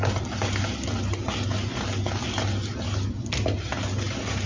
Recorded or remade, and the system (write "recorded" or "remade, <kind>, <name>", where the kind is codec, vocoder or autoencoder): recorded